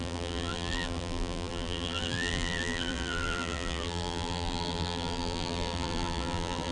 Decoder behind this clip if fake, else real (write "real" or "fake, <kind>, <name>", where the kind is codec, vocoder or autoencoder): fake, vocoder, BigVGAN v2